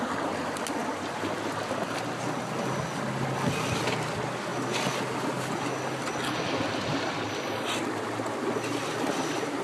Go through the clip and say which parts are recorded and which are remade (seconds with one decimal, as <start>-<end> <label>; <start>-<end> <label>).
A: 0.0-9.6 recorded